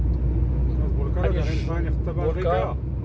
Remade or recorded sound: recorded